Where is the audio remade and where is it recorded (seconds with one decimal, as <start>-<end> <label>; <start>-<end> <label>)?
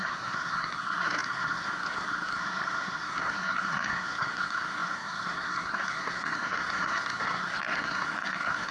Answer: 0.0-8.7 remade